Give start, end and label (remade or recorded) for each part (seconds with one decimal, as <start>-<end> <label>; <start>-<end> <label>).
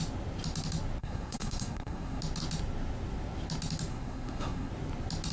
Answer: 0.0-1.0 recorded; 1.0-2.2 remade; 2.2-3.9 recorded; 3.9-4.7 remade; 4.7-5.3 recorded